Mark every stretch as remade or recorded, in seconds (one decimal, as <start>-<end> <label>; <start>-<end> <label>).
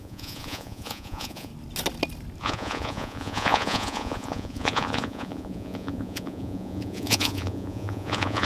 0.0-1.5 remade; 1.5-2.4 recorded; 2.4-8.5 remade